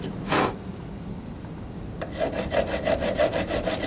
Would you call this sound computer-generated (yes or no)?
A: no